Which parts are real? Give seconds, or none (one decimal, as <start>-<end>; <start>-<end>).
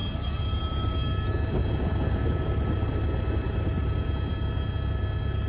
0.0-5.5